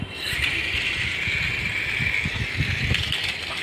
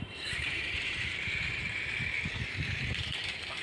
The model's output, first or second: second